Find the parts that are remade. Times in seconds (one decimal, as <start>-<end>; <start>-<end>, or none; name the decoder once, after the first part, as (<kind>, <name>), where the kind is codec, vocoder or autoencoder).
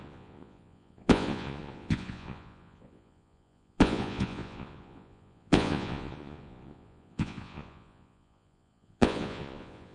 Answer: 0.0-9.9 (vocoder, Vocos)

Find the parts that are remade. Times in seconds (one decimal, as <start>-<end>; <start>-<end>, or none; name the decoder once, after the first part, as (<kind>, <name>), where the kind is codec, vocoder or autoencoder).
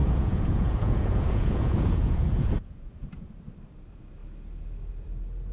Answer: 0.0-3.3 (vocoder, Vocos)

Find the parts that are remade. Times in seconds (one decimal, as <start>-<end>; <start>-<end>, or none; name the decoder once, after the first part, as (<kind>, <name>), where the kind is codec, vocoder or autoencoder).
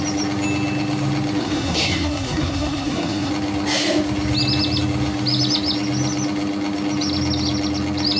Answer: 1.4-3.3 (codec, SNAC)